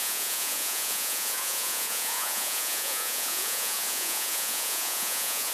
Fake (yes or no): yes